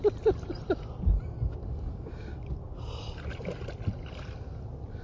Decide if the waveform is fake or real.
real